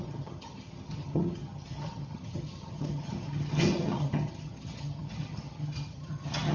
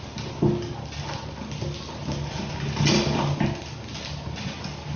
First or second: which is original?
second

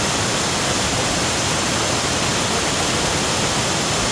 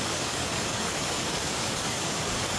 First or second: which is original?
first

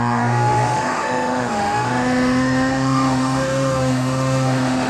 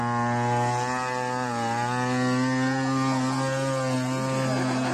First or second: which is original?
second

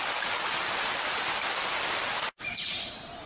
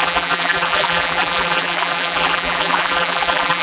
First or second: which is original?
first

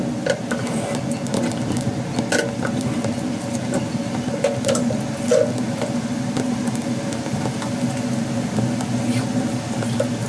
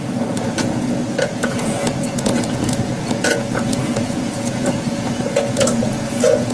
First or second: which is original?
first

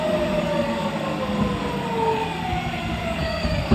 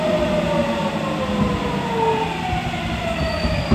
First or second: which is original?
second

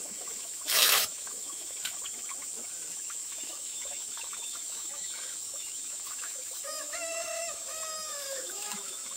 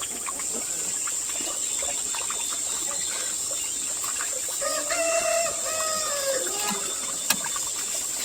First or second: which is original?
second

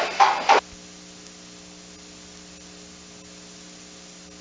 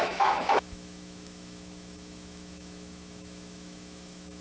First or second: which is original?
first